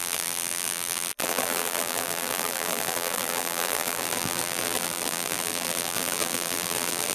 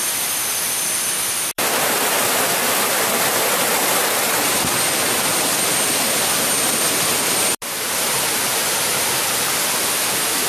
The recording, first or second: second